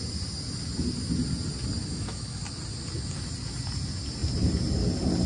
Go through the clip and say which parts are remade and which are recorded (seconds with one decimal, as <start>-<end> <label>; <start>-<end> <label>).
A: 0.0-1.8 recorded; 1.8-2.4 remade; 2.4-5.3 recorded